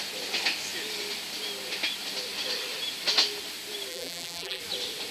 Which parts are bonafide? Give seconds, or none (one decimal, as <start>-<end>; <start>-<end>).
0.0-3.9; 4.6-5.1